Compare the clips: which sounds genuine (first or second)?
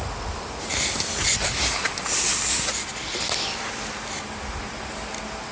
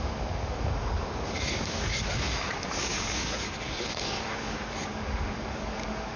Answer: first